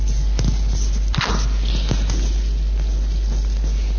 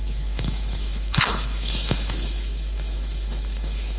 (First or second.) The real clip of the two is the first